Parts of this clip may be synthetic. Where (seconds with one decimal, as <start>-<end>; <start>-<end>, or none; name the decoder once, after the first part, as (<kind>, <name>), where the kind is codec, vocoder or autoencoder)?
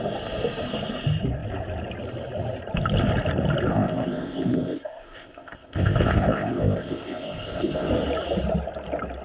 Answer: 3.7-7.9 (codec, ZipCodec)